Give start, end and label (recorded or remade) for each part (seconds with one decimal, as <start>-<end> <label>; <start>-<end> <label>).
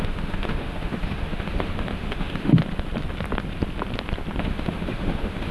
0.0-2.6 remade; 2.6-4.4 recorded; 4.4-5.5 remade